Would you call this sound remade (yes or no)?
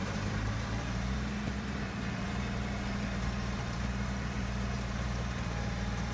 yes